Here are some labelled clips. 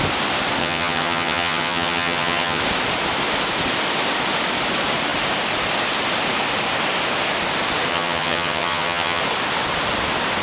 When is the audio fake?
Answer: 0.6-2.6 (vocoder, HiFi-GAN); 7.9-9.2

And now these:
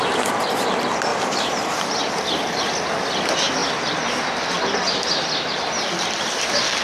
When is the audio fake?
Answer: 1.1-2.1 (vocoder, BigVGAN v2); 3.6-4.6